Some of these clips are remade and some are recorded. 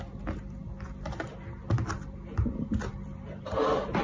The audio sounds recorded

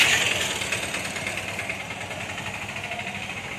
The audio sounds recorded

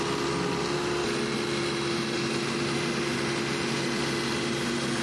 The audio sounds recorded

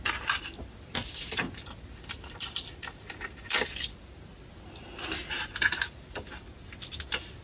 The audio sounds recorded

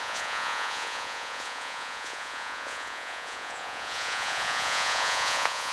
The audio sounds remade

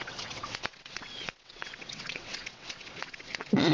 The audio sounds remade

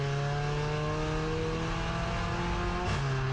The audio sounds recorded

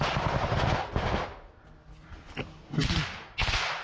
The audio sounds recorded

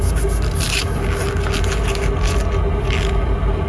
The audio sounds recorded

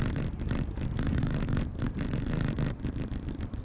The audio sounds recorded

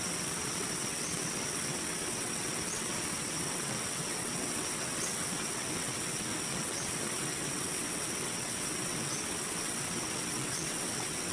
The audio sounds remade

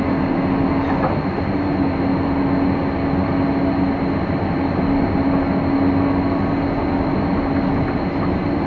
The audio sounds recorded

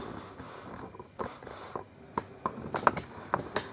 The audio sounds recorded